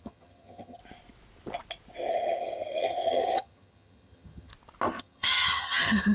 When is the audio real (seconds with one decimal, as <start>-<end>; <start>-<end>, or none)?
0.8-2.1; 4.5-5.0